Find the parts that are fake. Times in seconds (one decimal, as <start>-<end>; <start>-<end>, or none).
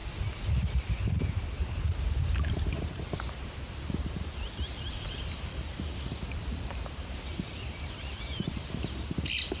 4.9-9.6